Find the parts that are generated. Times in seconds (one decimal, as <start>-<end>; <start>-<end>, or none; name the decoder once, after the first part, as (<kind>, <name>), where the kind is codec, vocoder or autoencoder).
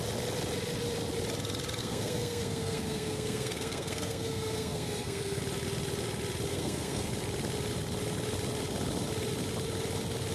1.8-5.4 (codec, SNAC); 6.5-7.1